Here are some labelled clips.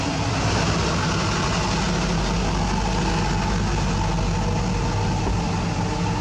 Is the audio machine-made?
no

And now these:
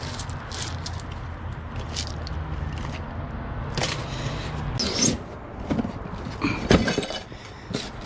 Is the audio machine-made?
no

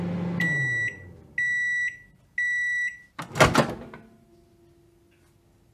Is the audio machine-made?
no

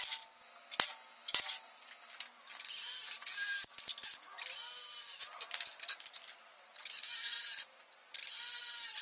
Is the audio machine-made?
no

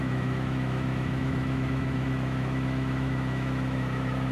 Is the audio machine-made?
yes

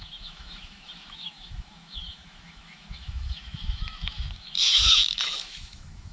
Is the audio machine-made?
yes